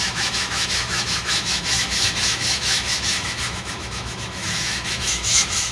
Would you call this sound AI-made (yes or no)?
yes